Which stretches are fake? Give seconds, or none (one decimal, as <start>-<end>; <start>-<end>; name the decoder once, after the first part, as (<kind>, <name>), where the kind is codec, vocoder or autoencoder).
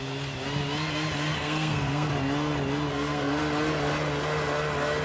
1.4-2.1 (codec, SNAC); 2.9-3.4